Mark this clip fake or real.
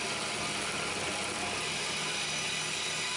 real